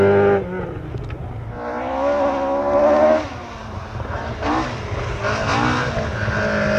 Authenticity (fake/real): real